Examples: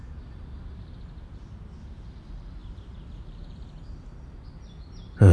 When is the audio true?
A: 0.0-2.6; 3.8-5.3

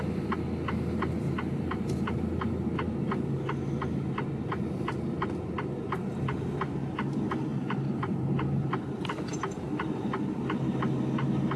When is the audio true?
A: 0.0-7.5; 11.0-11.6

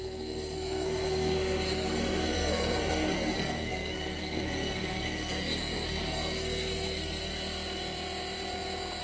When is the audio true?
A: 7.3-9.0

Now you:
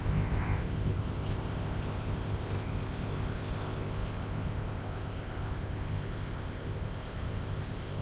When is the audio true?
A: none

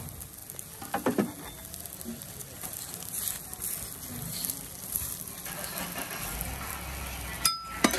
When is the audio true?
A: 0.0-8.0

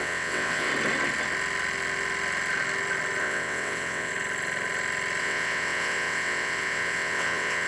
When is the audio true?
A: 0.7-3.2; 4.1-5.2

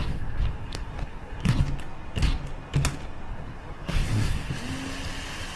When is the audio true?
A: 1.6-3.3; 4.5-5.6